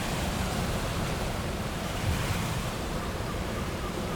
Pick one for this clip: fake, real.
fake